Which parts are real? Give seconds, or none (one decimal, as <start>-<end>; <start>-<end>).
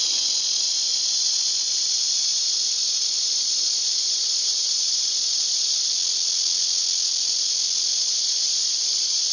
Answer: 5.9-8.0